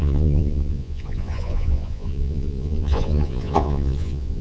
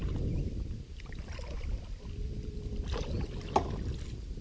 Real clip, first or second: second